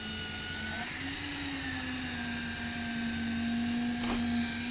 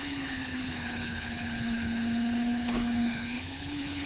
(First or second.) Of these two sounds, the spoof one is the second